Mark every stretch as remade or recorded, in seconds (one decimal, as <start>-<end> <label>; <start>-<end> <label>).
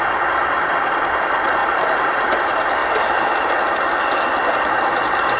0.0-2.8 remade; 2.8-4.6 recorded; 4.6-5.4 remade